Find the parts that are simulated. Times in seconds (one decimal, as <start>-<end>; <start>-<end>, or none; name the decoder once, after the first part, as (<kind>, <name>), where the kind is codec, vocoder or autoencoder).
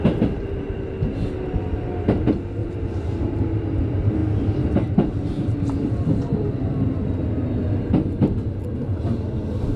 2.6-3.4 (vocoder, BigVGAN v2); 4.2-7.0